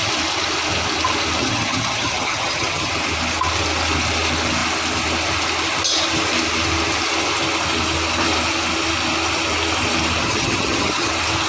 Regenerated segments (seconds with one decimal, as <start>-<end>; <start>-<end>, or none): 1.4-2.9; 10.2-11.1